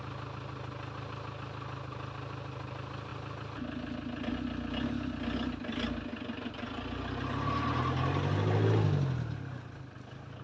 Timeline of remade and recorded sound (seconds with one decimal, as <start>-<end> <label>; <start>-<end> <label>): 0.0-10.4 recorded